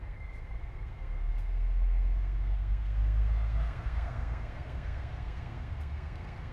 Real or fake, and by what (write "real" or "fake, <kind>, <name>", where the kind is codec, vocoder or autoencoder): fake, codec, SNAC